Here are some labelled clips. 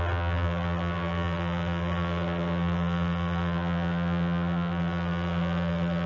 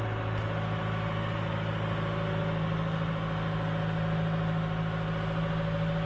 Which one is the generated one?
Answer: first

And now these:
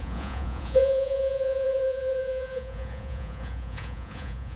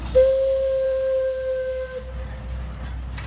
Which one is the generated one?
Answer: first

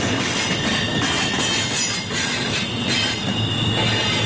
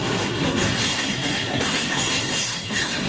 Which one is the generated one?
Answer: second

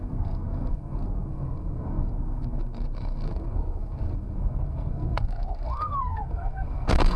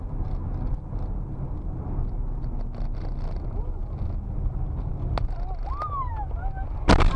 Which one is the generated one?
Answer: first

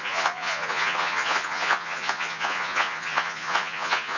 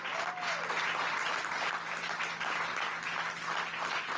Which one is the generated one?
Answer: first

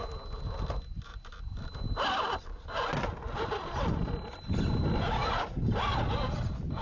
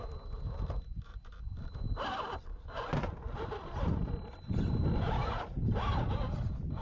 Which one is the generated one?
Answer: second